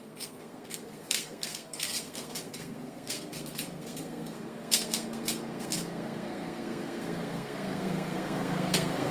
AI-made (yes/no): yes